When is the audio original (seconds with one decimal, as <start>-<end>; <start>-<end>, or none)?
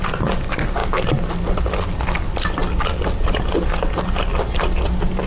0.0-5.3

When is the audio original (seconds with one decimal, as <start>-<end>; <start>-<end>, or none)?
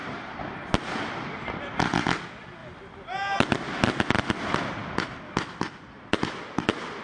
0.0-7.0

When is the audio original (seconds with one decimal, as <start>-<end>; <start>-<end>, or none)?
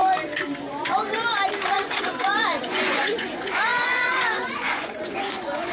0.0-1.7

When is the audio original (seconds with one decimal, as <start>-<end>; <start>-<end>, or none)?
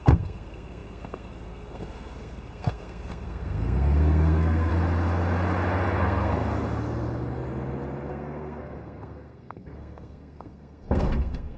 4.7-6.0; 6.4-8.1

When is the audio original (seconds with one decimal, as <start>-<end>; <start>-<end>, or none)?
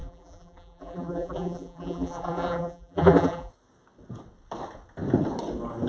3.5-5.9